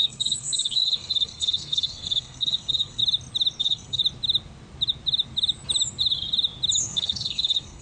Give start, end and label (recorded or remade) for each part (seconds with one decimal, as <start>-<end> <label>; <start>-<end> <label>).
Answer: 0.0-3.0 remade; 3.0-3.6 recorded; 3.6-4.0 remade; 4.0-6.8 recorded; 6.8-7.8 remade